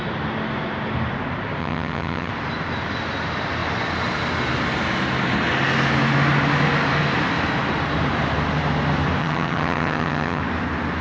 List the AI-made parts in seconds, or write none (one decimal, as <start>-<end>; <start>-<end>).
1.6-2.3; 9.2-10.4